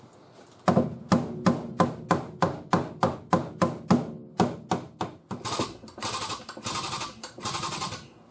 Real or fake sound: real